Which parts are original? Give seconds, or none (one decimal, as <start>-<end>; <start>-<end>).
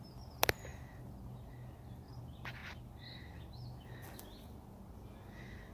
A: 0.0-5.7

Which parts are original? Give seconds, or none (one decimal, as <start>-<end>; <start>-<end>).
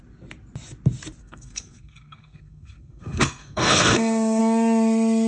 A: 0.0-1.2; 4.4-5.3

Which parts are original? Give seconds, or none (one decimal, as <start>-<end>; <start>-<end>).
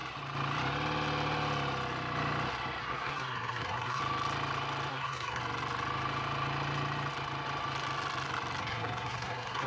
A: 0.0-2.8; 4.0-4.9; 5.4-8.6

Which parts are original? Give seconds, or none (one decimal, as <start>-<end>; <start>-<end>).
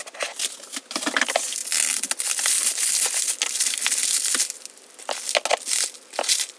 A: 0.0-6.6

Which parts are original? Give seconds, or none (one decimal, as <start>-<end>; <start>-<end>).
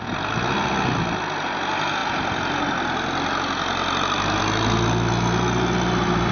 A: 0.0-6.3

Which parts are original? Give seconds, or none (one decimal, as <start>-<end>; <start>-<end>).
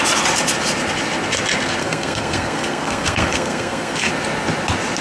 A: 0.0-1.8; 4.1-5.0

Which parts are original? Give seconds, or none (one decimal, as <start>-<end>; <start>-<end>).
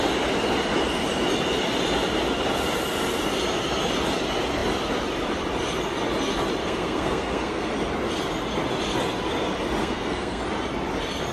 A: 0.0-6.6; 7.7-9.8; 10.4-11.3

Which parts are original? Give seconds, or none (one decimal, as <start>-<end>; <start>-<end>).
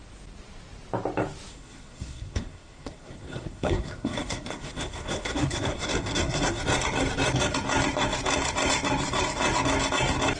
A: 0.0-1.5; 6.6-10.4